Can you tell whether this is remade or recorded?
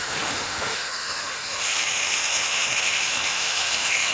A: remade